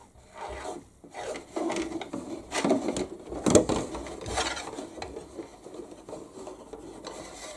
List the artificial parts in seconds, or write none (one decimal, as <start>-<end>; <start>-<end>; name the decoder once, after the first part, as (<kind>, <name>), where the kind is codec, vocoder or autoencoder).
none